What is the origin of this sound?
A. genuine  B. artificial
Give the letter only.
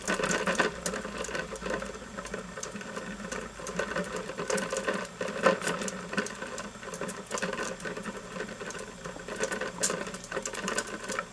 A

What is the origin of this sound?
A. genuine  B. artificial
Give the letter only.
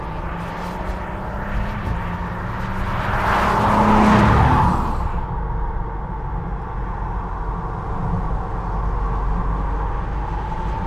A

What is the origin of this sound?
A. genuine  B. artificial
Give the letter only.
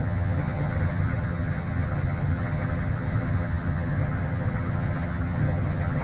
B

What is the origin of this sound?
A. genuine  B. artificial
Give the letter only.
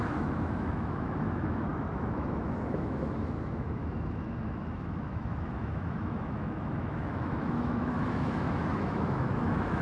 B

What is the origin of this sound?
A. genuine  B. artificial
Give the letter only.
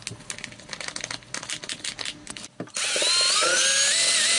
A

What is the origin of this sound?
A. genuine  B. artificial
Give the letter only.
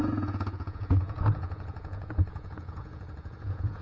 B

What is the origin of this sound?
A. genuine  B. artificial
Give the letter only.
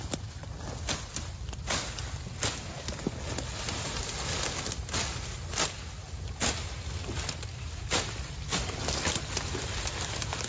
A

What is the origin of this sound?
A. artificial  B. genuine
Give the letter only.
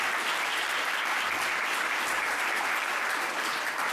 B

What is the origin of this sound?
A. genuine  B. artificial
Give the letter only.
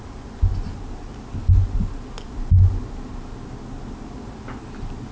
A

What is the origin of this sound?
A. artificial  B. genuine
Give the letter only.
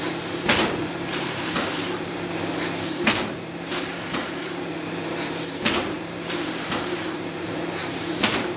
A